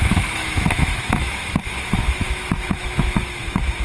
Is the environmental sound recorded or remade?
remade